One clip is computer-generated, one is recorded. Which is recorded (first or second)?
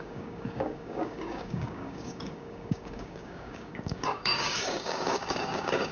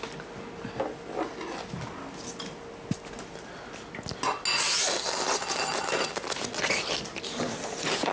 second